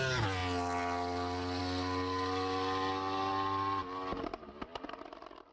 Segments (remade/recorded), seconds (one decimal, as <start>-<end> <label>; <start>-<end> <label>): 0.0-5.5 recorded